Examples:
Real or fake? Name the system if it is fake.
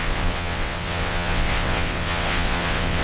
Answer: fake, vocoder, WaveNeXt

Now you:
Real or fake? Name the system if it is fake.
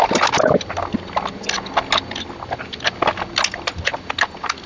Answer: real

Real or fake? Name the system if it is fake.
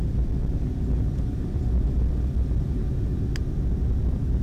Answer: real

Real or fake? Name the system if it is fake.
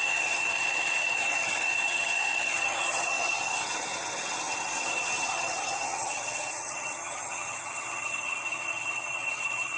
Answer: fake, vocoder, HiFi-GAN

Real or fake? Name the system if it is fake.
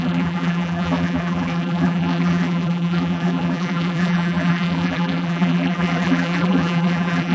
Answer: fake, vocoder, BigVGAN v2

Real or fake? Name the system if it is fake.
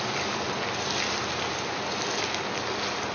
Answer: real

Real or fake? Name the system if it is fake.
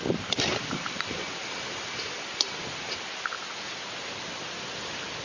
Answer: real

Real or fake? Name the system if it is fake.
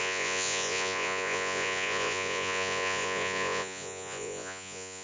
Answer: fake, vocoder, Vocos